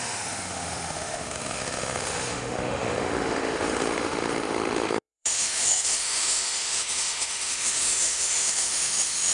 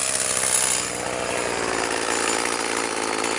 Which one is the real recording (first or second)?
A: second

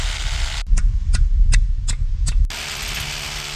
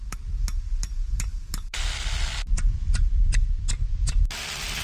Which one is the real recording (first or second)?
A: first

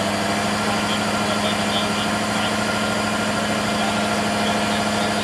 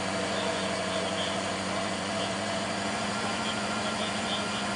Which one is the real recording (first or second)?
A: first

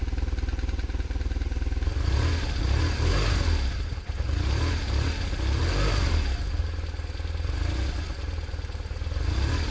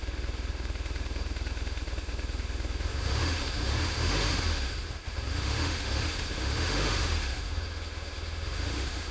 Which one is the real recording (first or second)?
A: first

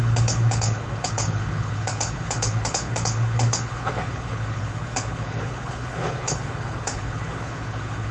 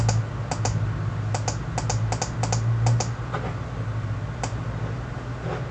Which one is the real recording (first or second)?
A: second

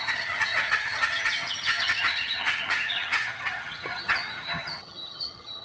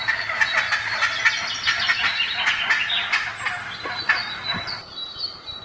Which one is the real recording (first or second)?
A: second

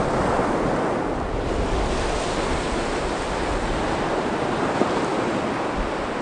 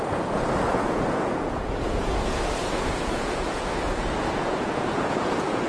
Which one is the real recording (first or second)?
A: first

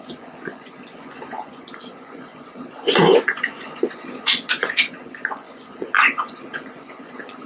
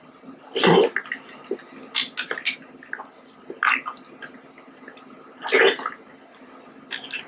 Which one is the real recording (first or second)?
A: second